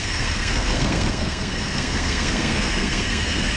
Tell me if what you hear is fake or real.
fake